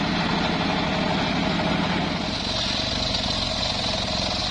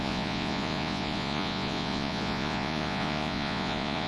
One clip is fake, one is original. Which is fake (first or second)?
second